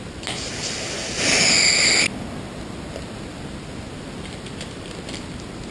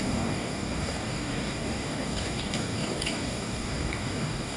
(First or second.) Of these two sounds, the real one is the first